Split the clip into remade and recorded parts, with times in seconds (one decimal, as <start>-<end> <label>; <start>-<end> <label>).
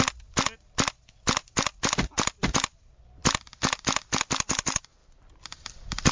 0.0-5.0 recorded; 5.0-6.1 remade